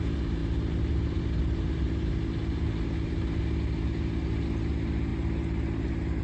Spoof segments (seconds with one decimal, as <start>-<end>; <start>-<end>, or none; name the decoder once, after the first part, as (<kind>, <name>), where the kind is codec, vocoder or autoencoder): none